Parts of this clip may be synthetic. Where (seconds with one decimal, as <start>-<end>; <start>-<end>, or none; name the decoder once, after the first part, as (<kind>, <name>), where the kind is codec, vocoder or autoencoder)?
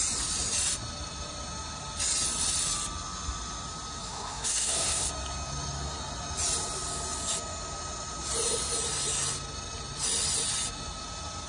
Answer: 4.0-5.1 (codec, SNAC)